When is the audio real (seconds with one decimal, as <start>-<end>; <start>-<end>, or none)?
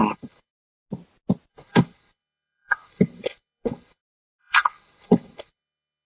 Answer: 0.5-1.5; 4.0-4.4